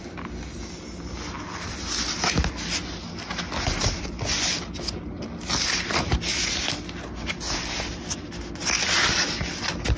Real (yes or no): yes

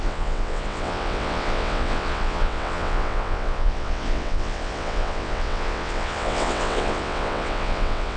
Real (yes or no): no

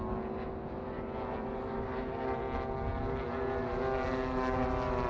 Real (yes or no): yes